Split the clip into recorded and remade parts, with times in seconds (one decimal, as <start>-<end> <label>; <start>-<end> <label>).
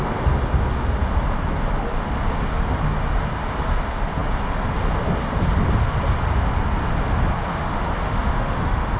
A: 0.0-7.5 recorded; 7.5-9.0 remade